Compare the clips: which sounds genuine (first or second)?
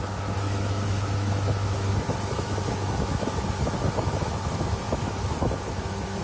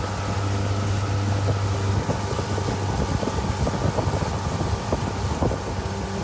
second